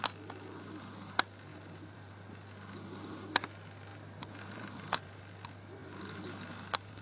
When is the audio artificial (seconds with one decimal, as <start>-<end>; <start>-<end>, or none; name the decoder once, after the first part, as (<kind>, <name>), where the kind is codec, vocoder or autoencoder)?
1.5-2.1 (vocoder, BigVGAN v2); 3.9-5.2; 5.8-7.0